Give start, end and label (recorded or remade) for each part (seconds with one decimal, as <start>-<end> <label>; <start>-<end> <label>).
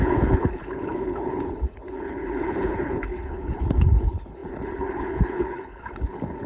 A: 0.0-6.5 remade